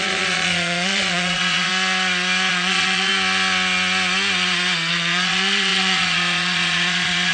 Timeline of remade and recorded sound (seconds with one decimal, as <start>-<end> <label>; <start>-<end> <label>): 0.0-1.7 remade; 1.7-2.5 recorded; 2.5-3.1 remade; 3.1-4.9 recorded; 4.9-7.3 remade